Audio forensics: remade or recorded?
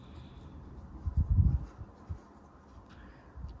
recorded